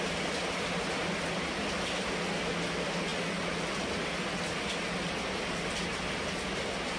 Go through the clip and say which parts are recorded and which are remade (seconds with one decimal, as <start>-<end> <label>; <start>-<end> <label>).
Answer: 0.0-7.0 recorded